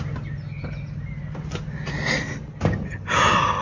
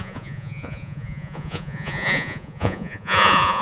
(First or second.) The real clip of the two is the first